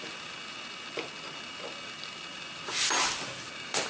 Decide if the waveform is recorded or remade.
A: recorded